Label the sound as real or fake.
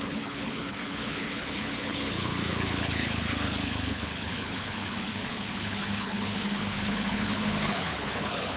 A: fake